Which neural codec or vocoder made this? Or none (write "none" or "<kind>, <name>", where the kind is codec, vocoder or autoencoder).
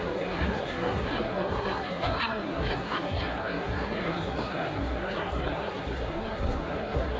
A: codec, SNAC